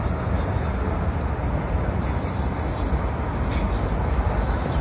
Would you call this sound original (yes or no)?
yes